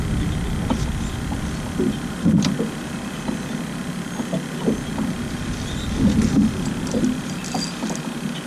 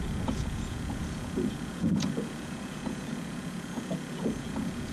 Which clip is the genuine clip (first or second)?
first